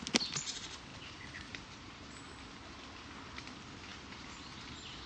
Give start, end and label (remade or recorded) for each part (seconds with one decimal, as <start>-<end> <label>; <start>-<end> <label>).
0.0-0.9 recorded; 0.9-2.1 remade; 2.1-3.9 recorded; 3.9-4.6 remade; 4.6-5.1 recorded